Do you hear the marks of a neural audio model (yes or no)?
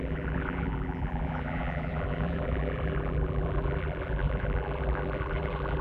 yes